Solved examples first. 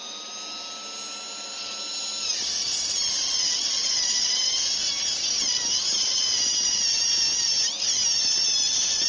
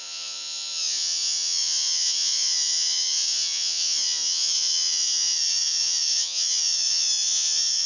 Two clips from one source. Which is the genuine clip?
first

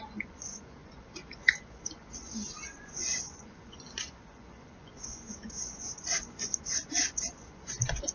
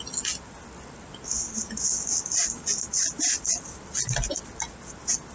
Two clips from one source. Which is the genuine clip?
second